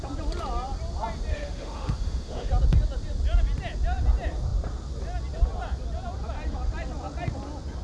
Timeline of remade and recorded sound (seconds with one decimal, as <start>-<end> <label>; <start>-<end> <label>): 0.0-1.3 recorded; 1.3-2.5 remade; 2.5-7.8 recorded